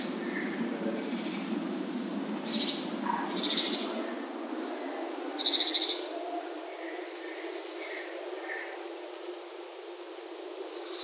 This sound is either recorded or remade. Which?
recorded